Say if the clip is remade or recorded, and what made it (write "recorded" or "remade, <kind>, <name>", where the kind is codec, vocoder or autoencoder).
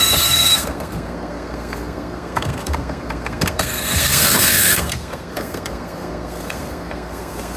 remade, codec, SNAC